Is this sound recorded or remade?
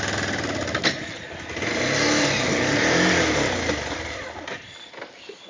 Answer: recorded